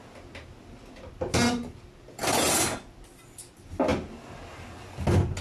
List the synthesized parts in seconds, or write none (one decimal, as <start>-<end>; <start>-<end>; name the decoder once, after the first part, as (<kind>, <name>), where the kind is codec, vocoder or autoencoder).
none